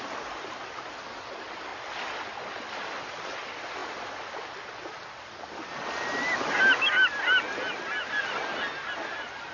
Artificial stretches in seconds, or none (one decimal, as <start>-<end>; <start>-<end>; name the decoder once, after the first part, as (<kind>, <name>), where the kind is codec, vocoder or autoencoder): none